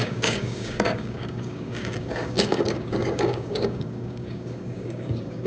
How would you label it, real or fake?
fake